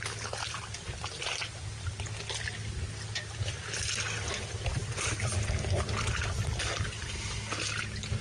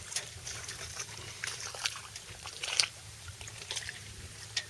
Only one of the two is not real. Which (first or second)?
second